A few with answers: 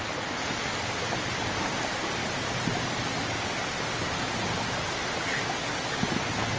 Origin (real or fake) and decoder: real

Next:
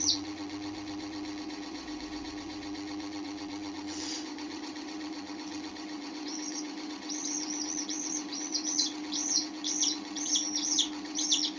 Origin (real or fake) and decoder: fake, vocoder, WaveNeXt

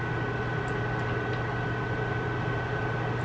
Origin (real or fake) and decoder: real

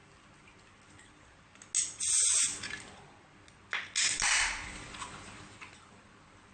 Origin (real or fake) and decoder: real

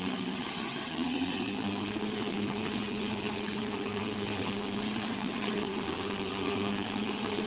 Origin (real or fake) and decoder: fake, vocoder, WaveNeXt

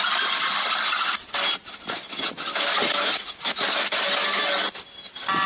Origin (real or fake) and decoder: real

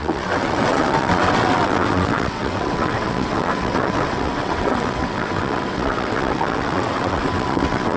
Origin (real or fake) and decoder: fake, vocoder, WaveNeXt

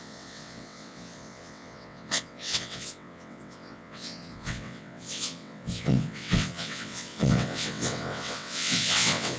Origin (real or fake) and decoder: fake, vocoder, WaveNeXt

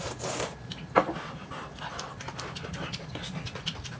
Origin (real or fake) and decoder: real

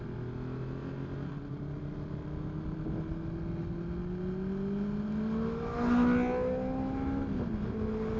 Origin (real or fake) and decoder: real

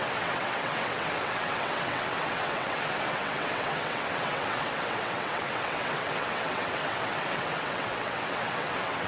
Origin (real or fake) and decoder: fake, vocoder, WaveNeXt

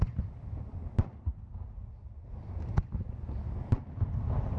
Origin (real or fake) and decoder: real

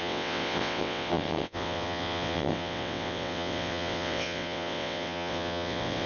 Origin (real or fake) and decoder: fake, vocoder, WaveNeXt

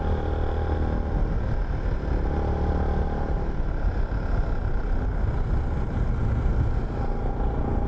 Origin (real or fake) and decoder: real